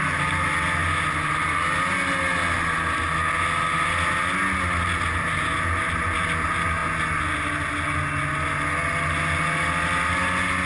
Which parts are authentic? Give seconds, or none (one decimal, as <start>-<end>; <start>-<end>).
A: 0.0-10.7

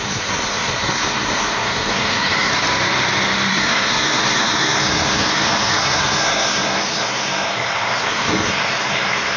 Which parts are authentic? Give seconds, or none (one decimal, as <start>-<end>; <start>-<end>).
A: 2.5-3.5